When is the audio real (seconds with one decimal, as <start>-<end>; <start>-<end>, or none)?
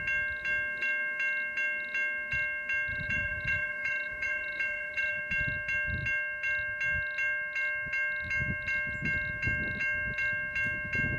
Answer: 0.0-2.9; 5.2-11.2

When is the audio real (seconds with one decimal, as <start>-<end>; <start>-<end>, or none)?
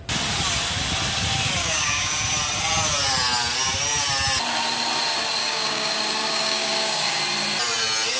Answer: 0.0-1.6; 2.1-5.4; 7.2-8.2